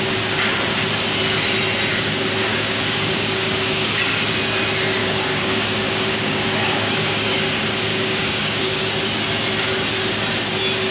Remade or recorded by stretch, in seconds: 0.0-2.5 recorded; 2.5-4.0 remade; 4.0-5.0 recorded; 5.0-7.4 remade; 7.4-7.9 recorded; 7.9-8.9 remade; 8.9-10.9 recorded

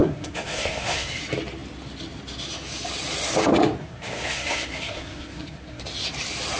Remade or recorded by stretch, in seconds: 0.0-1.2 remade; 1.2-3.8 recorded; 3.8-5.8 remade; 5.8-6.6 recorded